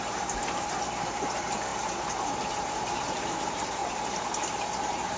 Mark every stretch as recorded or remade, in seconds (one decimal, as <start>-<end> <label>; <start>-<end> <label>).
0.0-3.8 remade; 3.8-4.5 recorded; 4.5-5.2 remade